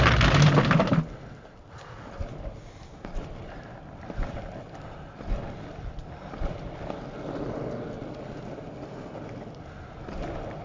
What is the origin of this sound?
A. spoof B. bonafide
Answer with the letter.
B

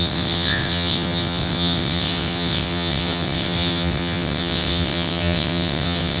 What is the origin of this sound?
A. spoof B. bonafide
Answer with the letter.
A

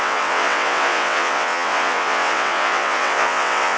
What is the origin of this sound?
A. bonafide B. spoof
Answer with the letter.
B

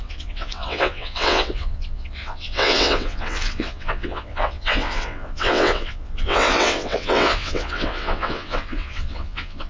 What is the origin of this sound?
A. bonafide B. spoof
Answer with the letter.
B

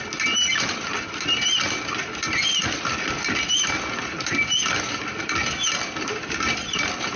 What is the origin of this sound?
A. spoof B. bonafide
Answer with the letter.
B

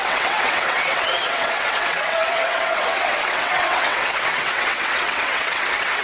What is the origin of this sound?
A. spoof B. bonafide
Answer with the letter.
A